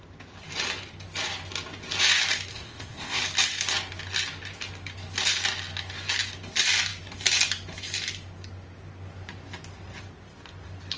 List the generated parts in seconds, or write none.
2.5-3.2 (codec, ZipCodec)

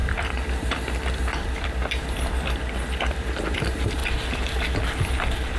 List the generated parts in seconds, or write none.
0.0-4.0 (vocoder, BigVGAN v2)

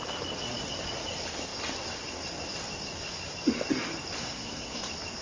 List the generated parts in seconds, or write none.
4.2-4.8 (codec, SNAC)

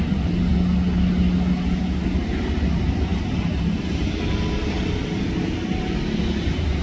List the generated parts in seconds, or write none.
none

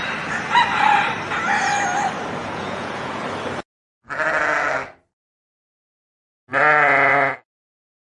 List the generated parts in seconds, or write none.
2.4-3.2 (vocoder, Vocos)

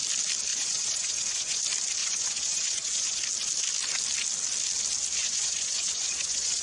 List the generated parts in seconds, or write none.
0.5-1.6 (vocoder, Vocos); 2.0-3.2; 5.2-6.6

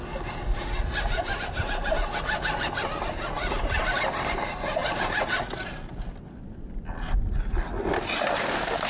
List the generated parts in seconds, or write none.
none